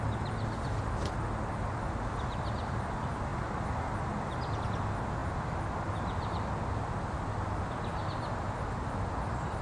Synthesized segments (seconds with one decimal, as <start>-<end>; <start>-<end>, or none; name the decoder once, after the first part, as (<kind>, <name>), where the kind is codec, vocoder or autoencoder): none